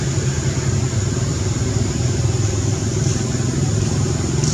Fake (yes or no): no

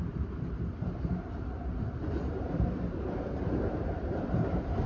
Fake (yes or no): yes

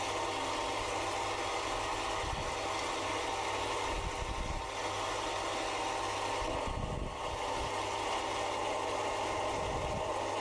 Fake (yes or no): no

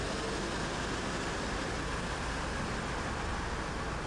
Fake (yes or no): no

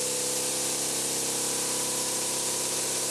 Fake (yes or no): yes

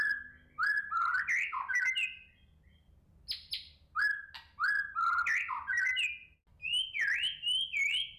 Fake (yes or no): no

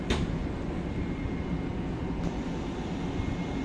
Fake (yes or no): no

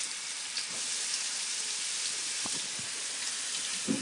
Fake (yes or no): yes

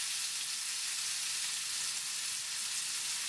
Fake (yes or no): no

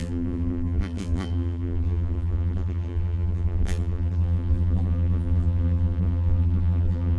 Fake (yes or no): yes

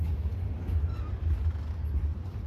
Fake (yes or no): no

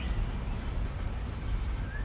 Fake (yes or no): no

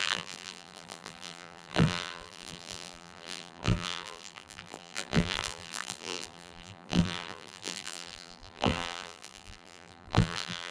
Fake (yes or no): yes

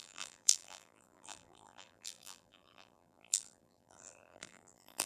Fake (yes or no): yes